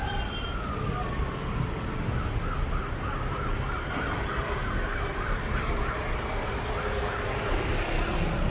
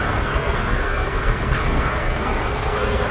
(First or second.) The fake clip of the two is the second